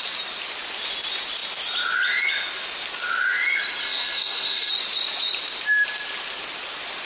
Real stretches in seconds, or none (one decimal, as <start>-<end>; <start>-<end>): 0.0-3.8; 4.7-7.1